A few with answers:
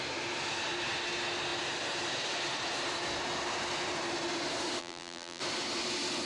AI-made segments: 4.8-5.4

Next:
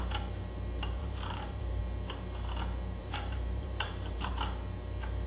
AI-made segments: 1.0-1.8; 3.0-4.3

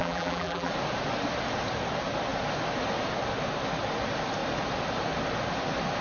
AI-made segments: 0.0-0.7